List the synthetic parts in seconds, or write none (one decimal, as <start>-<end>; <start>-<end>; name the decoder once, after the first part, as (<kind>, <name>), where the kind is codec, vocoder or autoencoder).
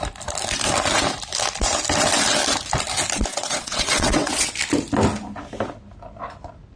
3.3-4.5 (vocoder, WaveNeXt)